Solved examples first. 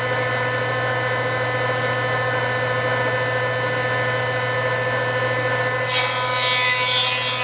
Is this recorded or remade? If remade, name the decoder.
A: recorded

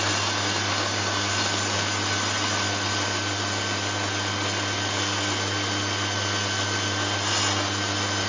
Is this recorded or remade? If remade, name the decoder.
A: recorded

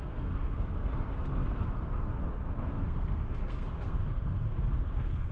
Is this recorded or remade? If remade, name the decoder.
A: remade, codec, SNAC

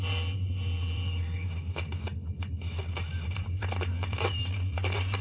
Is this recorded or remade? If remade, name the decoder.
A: recorded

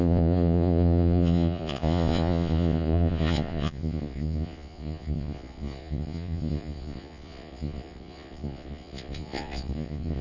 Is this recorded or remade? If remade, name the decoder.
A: remade, vocoder, Vocos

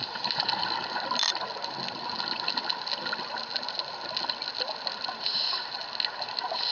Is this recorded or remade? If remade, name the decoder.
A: recorded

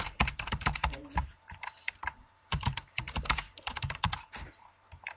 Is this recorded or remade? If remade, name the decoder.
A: remade, vocoder, BigVGAN v2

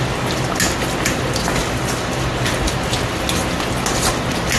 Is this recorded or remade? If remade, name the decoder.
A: recorded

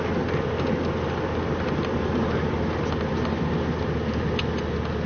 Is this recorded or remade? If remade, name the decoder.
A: recorded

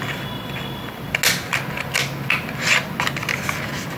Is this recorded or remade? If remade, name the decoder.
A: recorded